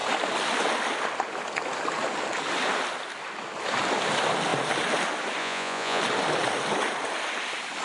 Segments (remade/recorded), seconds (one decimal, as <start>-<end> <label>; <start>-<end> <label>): 0.0-5.4 recorded; 5.4-6.0 remade; 6.0-7.8 recorded